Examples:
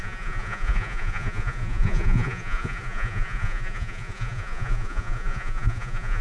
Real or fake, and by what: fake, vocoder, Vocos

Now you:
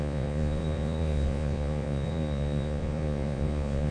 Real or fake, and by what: fake, vocoder, Vocos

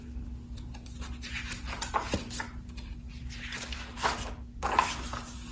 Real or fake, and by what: real